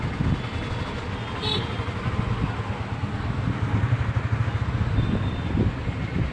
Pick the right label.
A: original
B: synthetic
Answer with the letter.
A